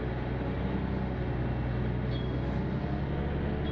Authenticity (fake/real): real